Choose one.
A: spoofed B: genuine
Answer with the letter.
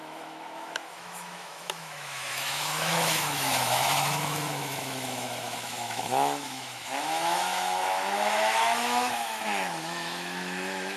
A